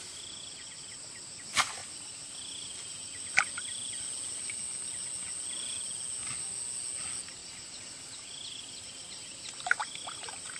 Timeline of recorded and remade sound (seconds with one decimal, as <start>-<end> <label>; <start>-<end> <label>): 0.0-9.8 recorded; 9.8-10.6 remade